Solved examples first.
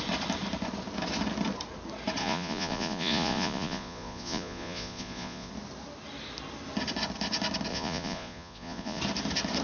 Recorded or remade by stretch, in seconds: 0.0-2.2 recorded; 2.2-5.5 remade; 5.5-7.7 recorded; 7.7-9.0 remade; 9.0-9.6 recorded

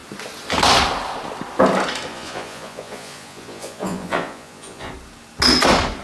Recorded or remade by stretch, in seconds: 0.0-2.1 recorded; 2.1-4.9 remade; 4.9-6.0 recorded

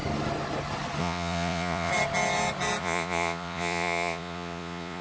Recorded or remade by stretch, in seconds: 0.0-1.0 recorded; 1.0-1.9 remade; 1.9-2.8 recorded; 2.8-5.0 remade

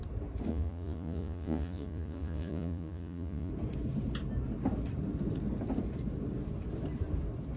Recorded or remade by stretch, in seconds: 0.0-0.5 recorded; 0.5-3.5 remade; 3.5-7.6 recorded

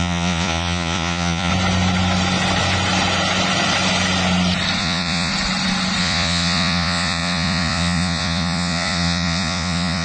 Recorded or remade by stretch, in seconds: 0.0-1.5 remade; 1.5-4.8 recorded; 4.8-5.3 remade; 5.3-6.0 recorded; 6.0-10.0 remade

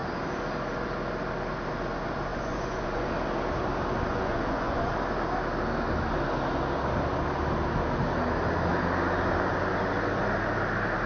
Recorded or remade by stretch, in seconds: 0.0-2.3 recorded; 2.3-3.1 remade; 3.1-4.1 recorded; 4.1-4.9 remade; 4.9-11.1 recorded

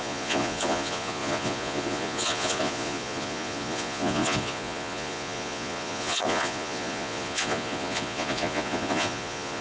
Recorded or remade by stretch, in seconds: 0.0-9.6 remade

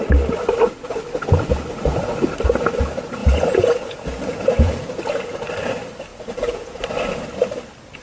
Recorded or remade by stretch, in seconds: 0.0-3.2 recorded; 3.2-4.9 remade; 4.9-6.1 recorded; 6.1-6.8 remade; 6.8-8.0 recorded